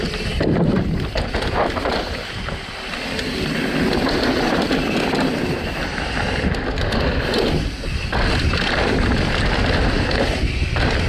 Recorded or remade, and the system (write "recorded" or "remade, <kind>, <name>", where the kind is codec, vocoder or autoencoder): recorded